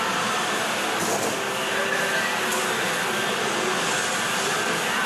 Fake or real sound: real